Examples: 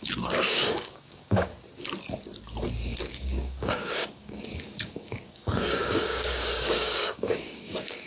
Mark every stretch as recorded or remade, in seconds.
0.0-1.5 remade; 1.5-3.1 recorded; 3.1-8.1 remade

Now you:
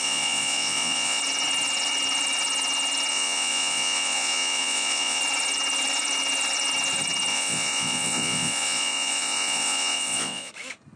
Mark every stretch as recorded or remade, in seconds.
0.0-1.2 remade; 1.2-3.1 recorded; 3.1-5.2 remade; 5.2-7.3 recorded; 7.3-10.5 remade; 10.5-11.0 recorded